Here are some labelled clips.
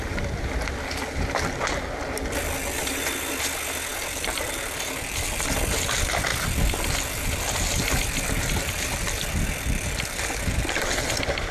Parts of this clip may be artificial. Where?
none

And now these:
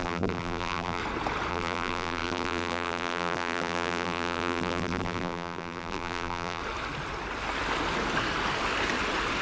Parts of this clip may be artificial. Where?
0.0-1.0 (vocoder, BigVGAN v2); 1.5-6.6

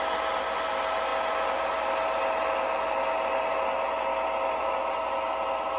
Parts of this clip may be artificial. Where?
none

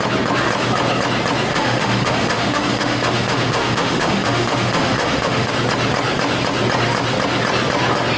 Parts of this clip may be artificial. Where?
1.5-5.5 (autoencoder, DAC-VAE)

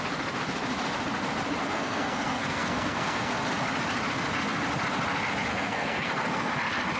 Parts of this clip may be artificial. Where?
1.6-3.3 (codec, SNAC); 5.5-6.5